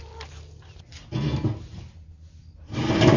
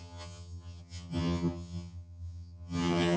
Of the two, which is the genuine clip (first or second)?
first